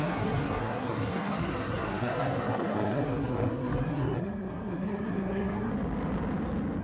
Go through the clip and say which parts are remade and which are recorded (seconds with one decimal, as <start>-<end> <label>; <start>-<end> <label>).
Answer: 0.0-5.7 remade; 5.7-6.8 recorded